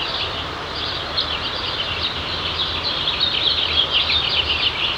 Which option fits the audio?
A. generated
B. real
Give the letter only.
B